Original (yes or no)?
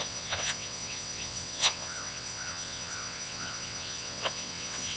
no